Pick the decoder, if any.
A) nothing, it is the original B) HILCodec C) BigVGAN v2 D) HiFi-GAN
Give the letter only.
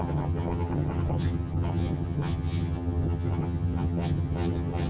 D